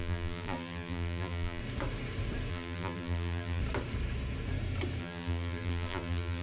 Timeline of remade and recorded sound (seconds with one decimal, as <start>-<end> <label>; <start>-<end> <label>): 0.0-1.6 remade; 1.6-2.5 recorded; 2.5-3.6 remade; 3.6-5.0 recorded; 5.0-6.4 remade